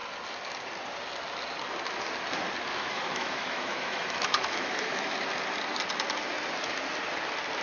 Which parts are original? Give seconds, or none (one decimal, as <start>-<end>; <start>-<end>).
0.0-2.7; 5.1-7.6